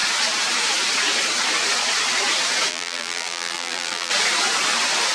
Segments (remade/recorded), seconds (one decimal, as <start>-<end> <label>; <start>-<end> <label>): 0.0-2.7 recorded; 2.7-4.1 remade; 4.1-5.1 recorded